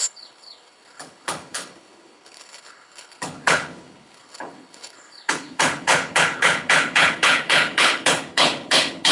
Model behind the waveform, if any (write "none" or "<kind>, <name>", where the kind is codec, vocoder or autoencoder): codec, HILCodec